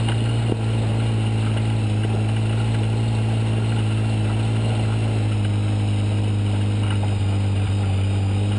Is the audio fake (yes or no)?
no